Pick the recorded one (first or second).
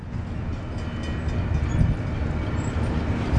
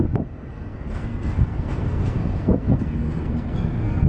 first